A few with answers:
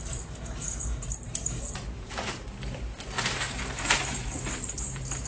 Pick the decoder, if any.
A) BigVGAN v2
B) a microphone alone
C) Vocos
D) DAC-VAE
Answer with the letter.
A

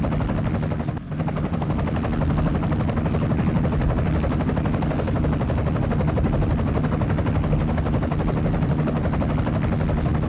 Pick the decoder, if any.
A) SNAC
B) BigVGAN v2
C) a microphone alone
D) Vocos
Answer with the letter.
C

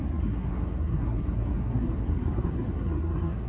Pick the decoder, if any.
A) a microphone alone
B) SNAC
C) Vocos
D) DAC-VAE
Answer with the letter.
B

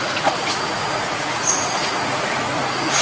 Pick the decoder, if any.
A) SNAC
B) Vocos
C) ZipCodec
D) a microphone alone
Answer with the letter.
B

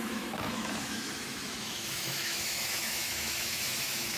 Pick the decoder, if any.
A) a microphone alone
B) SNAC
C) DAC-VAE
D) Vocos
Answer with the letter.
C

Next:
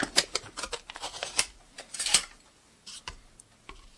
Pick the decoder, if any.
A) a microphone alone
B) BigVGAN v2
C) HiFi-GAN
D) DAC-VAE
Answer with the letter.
B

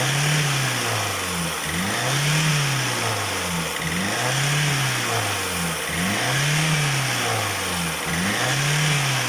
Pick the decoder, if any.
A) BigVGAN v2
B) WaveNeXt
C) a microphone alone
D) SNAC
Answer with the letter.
C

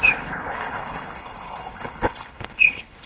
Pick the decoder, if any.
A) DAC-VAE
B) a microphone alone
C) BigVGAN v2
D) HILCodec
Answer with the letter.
D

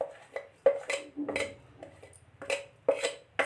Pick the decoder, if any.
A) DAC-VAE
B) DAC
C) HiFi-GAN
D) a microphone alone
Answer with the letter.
D